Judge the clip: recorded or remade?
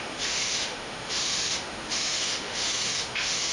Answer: remade